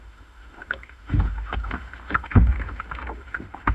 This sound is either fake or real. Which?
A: fake